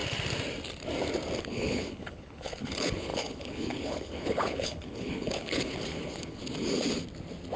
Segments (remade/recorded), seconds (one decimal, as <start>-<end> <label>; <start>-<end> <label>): 0.0-1.4 recorded; 1.4-6.4 remade; 6.4-7.6 recorded